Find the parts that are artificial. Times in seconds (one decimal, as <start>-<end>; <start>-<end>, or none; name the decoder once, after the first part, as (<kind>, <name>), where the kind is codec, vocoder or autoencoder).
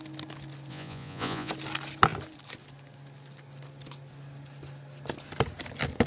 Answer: 0.7-1.5 (vocoder, Vocos)